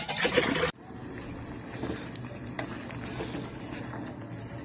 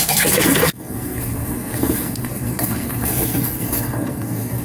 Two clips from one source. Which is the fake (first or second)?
second